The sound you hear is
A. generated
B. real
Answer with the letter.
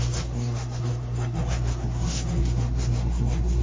A